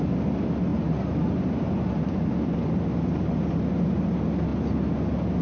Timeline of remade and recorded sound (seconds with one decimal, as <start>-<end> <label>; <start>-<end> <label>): 0.0-5.4 recorded